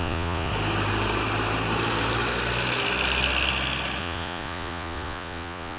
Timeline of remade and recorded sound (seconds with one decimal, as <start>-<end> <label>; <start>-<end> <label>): 0.0-0.5 remade; 0.5-4.0 recorded; 4.0-5.8 remade